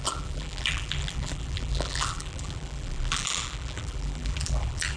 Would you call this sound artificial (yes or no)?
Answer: yes